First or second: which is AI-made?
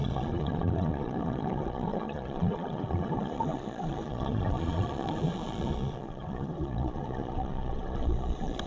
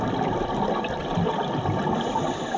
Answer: first